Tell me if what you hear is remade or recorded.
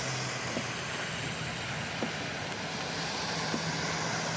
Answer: recorded